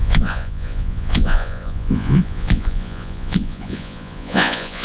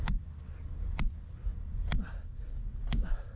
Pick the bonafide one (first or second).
second